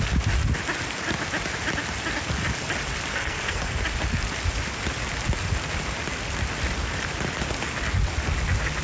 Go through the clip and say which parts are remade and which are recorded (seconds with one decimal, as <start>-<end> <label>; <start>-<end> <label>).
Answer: 0.0-3.1 recorded; 3.1-3.8 remade; 3.8-8.8 recorded